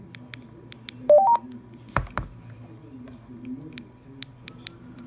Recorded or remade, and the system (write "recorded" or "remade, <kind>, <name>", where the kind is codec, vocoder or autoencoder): recorded